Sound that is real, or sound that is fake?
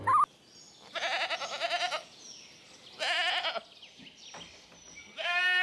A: real